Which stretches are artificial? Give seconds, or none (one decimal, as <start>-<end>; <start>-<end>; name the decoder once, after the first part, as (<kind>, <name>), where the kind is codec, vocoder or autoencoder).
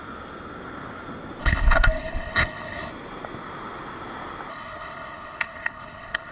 1.4-2.9 (codec, HILCodec); 4.5-6.3